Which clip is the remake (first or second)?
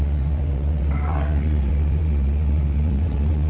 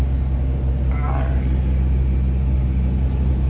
first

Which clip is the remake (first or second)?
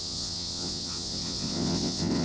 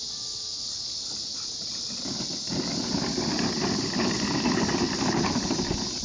first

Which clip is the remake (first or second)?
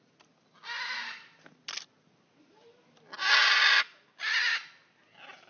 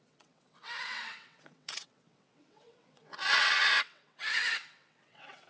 second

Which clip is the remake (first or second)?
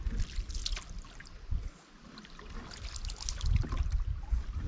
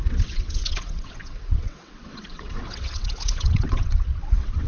second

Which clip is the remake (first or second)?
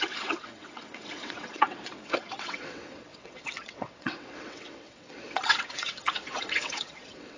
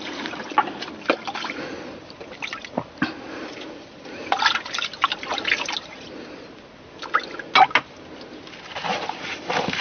first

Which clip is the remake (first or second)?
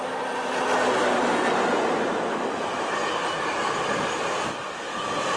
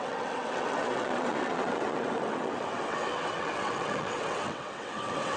second